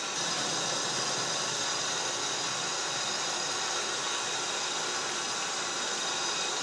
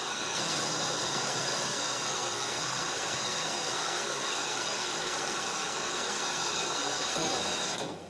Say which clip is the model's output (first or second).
second